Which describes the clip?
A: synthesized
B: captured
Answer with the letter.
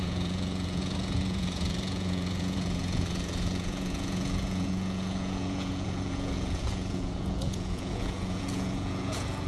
A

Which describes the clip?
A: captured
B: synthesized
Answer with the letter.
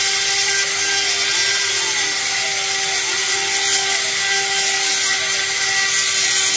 A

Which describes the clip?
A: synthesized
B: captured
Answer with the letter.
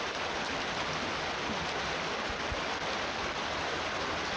B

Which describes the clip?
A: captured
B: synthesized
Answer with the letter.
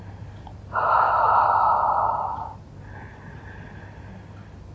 A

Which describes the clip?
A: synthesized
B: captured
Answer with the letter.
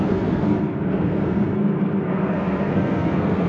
A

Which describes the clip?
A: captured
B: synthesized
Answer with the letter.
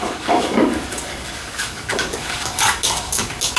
B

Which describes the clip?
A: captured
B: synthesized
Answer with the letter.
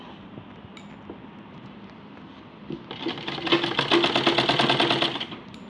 A